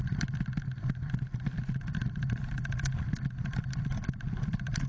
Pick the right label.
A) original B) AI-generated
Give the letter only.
B